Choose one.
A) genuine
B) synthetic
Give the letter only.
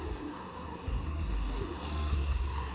B